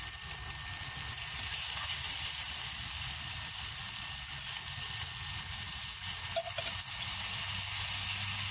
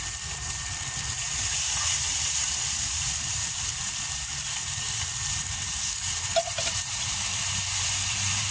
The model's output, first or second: second